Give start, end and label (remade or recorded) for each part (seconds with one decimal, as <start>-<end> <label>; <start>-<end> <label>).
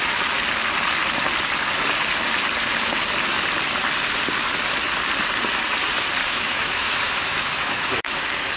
0.0-6.2 recorded; 6.2-8.2 remade; 8.2-8.6 recorded